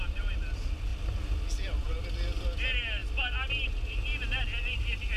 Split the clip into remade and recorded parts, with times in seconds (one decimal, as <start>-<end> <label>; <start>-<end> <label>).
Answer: 0.0-5.2 recorded